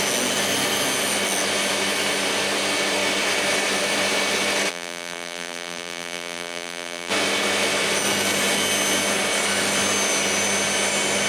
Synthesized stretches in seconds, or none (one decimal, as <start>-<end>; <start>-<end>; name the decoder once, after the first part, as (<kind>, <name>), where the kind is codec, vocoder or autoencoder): 4.7-7.1 (vocoder, BigVGAN v2)